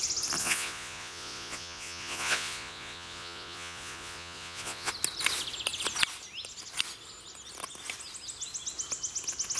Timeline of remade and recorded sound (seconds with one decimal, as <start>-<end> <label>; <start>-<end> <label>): 0.0-0.4 recorded; 0.4-4.9 remade; 4.9-9.6 recorded